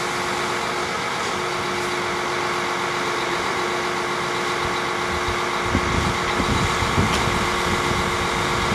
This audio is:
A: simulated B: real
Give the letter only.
B